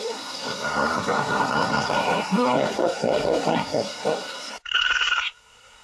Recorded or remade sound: remade